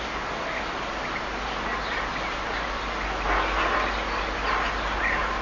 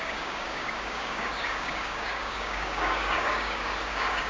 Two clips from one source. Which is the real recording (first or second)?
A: first